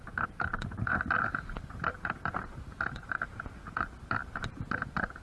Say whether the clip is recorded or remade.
remade